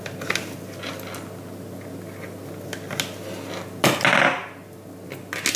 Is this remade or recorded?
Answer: recorded